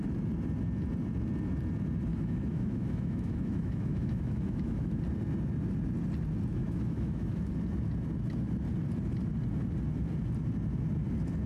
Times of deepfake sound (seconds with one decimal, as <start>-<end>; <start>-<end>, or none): 2.1-5.0; 6.5-7.5

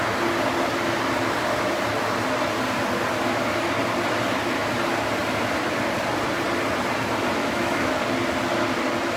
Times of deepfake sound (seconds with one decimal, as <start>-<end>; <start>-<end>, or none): 7.4-8.0

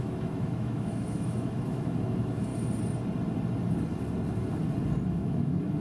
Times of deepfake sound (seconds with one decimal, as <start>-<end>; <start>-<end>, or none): 0.0-2.5; 5.1-5.8

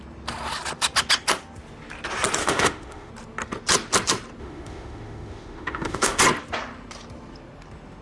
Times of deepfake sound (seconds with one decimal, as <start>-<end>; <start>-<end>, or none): 2.4-3.1; 4.4-6.2